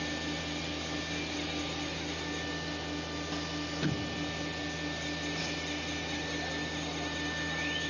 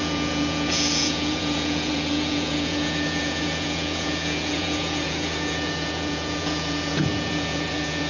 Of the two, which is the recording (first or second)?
first